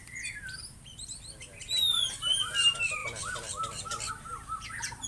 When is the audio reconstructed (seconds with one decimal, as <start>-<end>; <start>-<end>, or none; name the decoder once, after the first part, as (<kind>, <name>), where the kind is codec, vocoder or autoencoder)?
0.0-0.6 (vocoder, BigVGAN v2); 3.0-4.1